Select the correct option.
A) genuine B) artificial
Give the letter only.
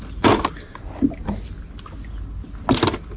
A